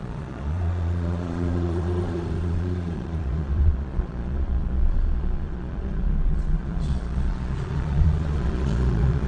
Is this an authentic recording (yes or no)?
no